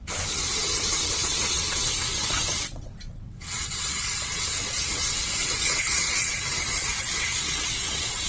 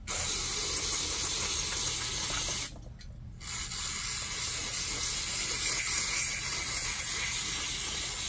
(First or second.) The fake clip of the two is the first